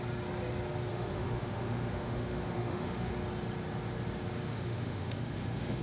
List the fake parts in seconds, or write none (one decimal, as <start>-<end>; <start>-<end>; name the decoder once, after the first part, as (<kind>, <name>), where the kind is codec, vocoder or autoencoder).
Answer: 0.9-3.1 (autoencoder, DAC-VAE); 4.5-5.8